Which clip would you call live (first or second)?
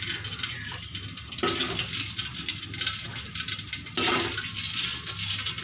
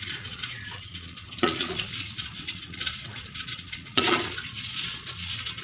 first